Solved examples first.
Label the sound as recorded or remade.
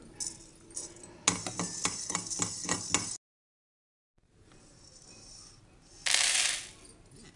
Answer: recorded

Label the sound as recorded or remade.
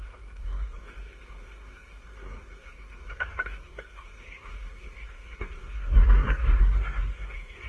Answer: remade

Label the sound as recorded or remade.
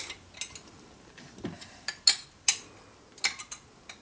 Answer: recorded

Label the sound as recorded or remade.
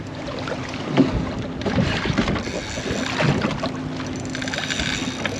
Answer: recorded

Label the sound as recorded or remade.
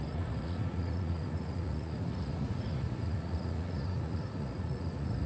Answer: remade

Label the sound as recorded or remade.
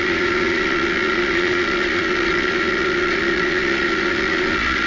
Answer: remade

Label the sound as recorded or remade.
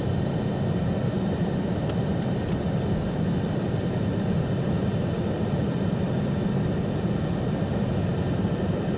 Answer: recorded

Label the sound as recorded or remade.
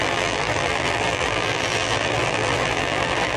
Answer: remade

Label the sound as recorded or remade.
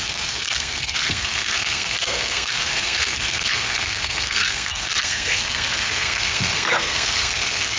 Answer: remade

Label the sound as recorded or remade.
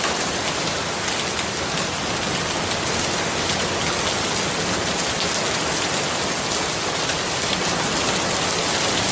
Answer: recorded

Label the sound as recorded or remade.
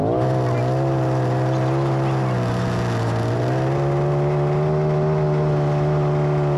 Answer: recorded